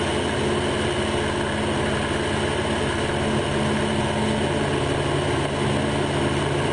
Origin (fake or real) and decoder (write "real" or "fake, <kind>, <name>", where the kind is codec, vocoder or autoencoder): real